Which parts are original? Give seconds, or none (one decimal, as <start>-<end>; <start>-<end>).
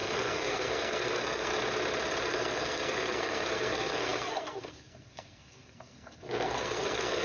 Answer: 1.5-2.2